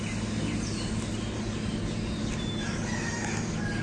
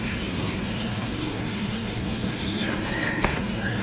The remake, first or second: second